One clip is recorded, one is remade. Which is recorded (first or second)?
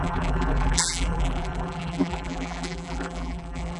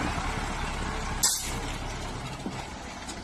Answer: second